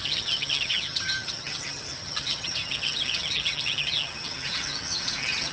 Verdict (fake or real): fake